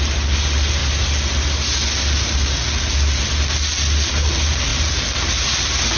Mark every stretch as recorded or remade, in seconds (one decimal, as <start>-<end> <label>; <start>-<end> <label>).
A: 0.0-6.0 recorded